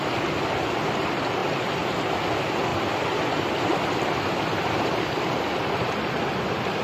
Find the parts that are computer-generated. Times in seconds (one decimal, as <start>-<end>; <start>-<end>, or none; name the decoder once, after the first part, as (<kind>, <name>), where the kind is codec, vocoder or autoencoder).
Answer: 1.4-2.1 (vocoder, BigVGAN v2); 2.7-6.8